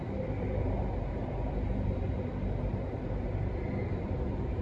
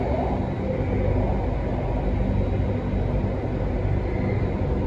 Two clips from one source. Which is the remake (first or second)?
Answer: first